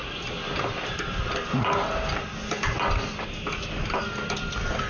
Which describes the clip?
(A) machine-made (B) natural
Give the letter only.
B